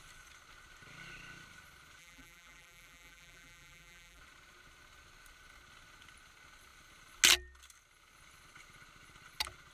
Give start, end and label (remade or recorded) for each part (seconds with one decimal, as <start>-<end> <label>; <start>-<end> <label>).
0.0-2.0 recorded; 2.0-4.2 remade; 4.2-9.7 recorded